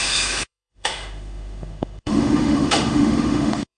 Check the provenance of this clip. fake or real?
fake